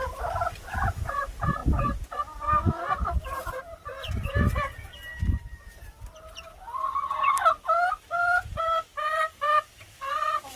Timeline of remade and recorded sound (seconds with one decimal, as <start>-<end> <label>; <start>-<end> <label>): 0.0-5.1 recorded; 5.1-6.3 remade; 6.3-8.9 recorded; 8.9-10.6 remade